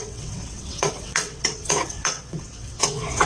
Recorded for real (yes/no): no